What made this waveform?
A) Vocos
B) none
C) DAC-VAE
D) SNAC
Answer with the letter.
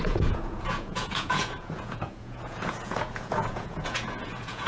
A